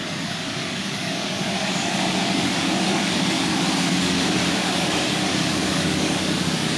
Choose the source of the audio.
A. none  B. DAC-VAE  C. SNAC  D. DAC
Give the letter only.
D